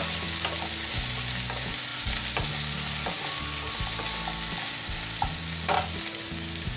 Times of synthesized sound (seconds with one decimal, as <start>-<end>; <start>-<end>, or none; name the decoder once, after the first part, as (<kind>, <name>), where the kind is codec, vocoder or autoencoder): none